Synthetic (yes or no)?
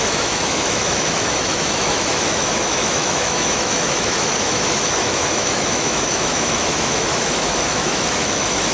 yes